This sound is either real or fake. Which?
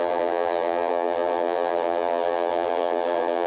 fake